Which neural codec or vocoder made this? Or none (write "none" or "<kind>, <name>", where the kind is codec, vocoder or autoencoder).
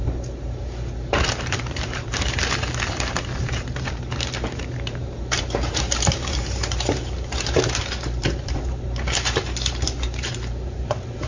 vocoder, BigVGAN v2